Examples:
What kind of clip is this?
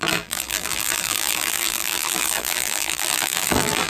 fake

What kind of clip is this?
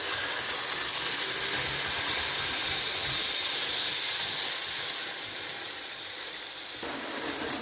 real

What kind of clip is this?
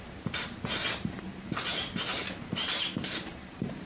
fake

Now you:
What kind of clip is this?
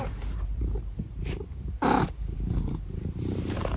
fake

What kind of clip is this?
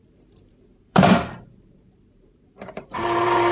fake